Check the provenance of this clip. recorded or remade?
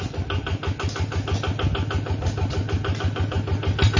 recorded